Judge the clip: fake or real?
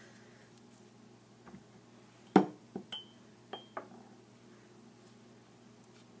real